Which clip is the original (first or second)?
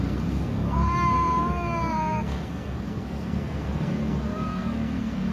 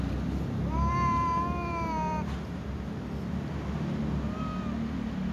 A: second